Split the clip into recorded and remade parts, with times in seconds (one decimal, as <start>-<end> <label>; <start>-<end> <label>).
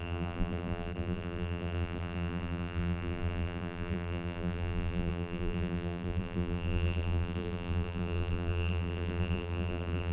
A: 0.0-10.1 remade